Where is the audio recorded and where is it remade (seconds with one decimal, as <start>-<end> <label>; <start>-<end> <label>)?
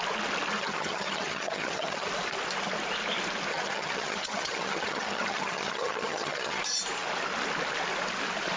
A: 0.0-0.5 recorded; 0.5-2.1 remade; 2.1-3.5 recorded; 3.5-6.6 remade; 6.6-8.6 recorded